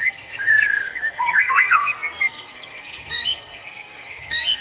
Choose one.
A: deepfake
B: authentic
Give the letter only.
A